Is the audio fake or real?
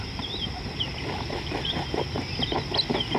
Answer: real